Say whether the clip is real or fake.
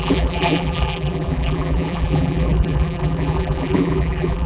fake